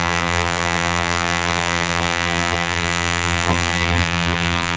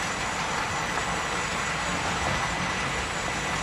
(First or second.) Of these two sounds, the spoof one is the first